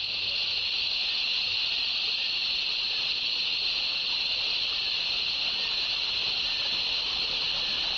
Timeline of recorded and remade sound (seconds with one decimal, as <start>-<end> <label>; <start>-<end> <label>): 0.0-6.2 recorded; 6.2-6.8 remade; 6.8-8.0 recorded